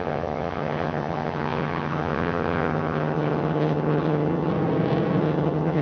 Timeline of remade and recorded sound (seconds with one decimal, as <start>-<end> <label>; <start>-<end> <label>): 0.0-4.5 remade; 4.5-5.2 recorded; 5.2-5.8 remade